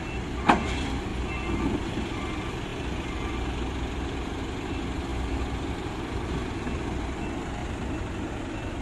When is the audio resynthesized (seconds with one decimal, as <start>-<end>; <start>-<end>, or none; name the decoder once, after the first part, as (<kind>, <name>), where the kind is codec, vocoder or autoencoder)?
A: 0.0-1.1 (vocoder, BigVGAN v2); 1.8-5.1; 5.7-7.6; 8.3-8.8